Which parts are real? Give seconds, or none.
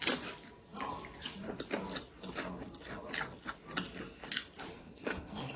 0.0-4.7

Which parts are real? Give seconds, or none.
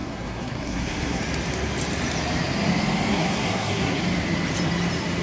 1.2-3.1; 4.0-5.2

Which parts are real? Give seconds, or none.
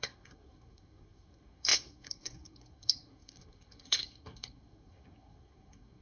none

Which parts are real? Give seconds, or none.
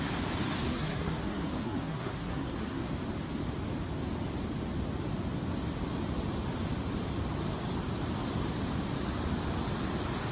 0.0-0.7; 2.8-10.3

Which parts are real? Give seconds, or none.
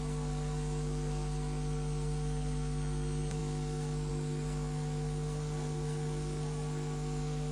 none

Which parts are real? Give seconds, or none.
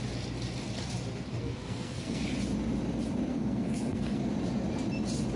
0.0-1.3; 2.2-3.3; 4.3-5.4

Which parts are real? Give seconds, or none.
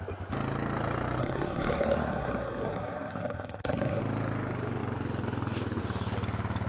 0.0-1.2; 4.0-6.7